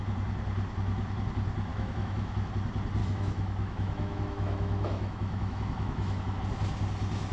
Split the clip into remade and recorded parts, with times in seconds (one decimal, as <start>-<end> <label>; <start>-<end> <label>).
0.0-1.7 recorded; 1.7-2.5 remade; 2.5-3.0 recorded; 3.0-6.4 remade; 6.4-7.3 recorded

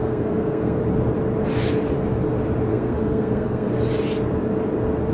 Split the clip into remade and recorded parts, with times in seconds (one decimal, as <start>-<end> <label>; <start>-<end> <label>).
0.0-0.8 remade; 0.8-2.7 recorded; 2.7-3.7 remade; 3.7-5.1 recorded

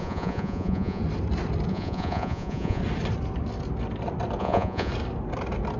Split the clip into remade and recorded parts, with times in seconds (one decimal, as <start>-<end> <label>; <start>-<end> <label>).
0.0-1.0 remade; 1.0-1.7 recorded; 1.7-2.8 remade; 2.8-4.4 recorded; 4.4-4.9 remade; 4.9-5.8 recorded

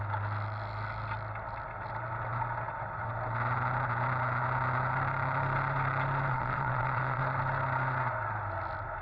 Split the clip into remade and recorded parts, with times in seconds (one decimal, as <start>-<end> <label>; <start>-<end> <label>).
0.0-6.3 recorded; 6.3-7.2 remade; 7.2-9.0 recorded

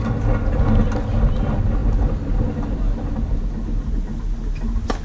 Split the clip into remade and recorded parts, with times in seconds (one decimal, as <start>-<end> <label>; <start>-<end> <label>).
0.0-5.0 recorded

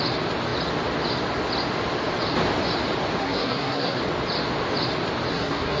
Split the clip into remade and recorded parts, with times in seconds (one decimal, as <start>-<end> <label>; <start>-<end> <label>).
0.0-3.2 recorded; 3.2-4.0 remade; 4.0-5.3 recorded; 5.3-5.8 remade

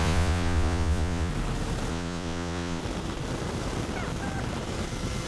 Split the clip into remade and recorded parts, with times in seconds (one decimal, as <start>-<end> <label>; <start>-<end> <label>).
0.0-1.3 remade; 1.3-1.9 recorded; 1.9-2.8 remade; 2.8-5.3 recorded

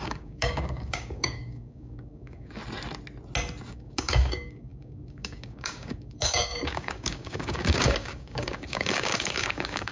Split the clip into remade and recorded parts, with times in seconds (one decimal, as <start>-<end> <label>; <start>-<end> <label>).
0.0-2.6 remade; 2.6-3.7 recorded; 3.7-9.9 remade